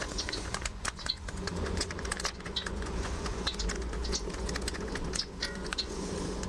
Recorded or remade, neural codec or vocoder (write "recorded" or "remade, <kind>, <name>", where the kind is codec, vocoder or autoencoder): remade, vocoder, Vocos